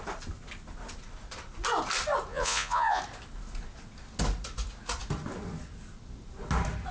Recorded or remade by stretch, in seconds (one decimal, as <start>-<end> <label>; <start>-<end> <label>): 0.0-2.3 recorded; 2.3-3.0 remade; 3.0-6.9 recorded